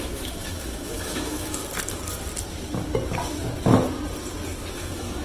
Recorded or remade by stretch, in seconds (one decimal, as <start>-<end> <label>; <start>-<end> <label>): 0.0-1.6 remade; 1.6-4.7 recorded; 4.7-5.2 remade